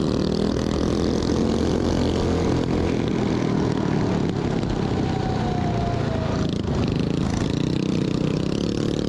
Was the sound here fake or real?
real